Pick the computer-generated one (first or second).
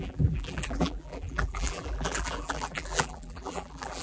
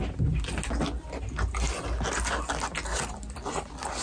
first